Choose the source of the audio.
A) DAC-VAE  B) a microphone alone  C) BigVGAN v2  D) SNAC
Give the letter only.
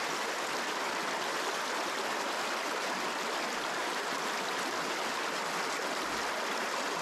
B